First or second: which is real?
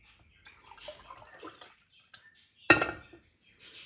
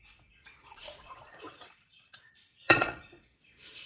first